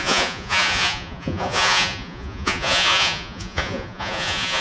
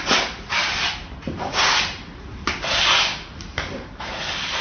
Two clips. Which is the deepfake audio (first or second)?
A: first